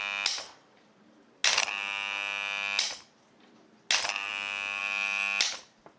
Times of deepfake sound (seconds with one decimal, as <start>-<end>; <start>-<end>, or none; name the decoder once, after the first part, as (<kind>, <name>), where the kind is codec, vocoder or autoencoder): none